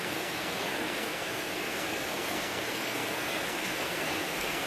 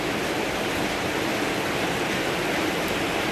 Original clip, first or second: second